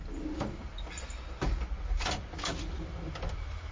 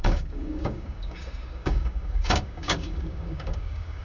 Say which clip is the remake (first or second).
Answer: second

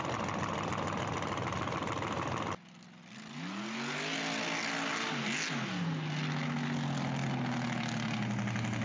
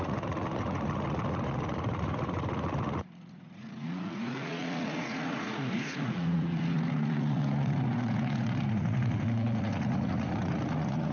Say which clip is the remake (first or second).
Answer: second